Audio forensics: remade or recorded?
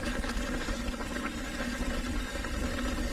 recorded